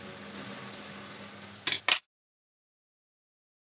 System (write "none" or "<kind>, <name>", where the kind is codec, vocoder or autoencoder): none